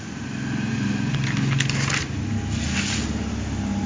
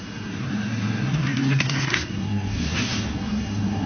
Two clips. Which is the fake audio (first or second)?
second